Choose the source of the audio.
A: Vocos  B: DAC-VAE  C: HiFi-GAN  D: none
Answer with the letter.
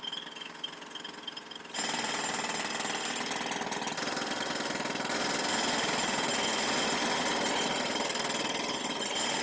D